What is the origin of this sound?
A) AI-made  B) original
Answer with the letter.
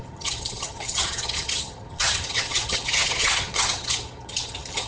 A